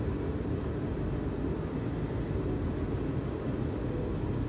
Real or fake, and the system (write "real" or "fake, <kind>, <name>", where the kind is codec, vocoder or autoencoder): real